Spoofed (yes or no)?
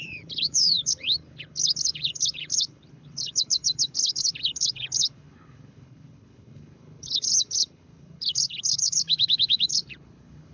yes